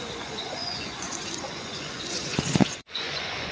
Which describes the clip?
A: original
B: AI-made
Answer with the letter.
B